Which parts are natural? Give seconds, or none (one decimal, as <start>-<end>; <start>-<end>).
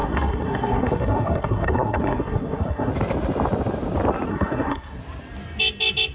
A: 2.9-4.3; 5.0-6.1